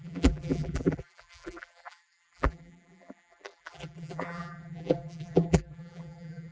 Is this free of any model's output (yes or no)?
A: no